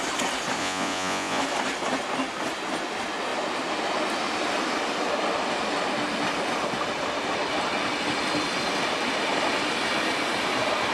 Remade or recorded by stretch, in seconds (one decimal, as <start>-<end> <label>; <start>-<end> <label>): 0.0-0.6 recorded; 0.6-1.4 remade; 1.4-10.9 recorded